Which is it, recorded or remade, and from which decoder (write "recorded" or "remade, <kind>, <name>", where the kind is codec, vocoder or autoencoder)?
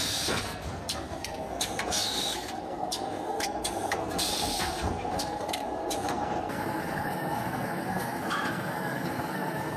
remade, codec, SNAC